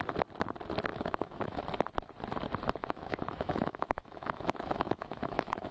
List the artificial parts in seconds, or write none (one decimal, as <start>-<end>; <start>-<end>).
0.9-1.6; 2.8-5.7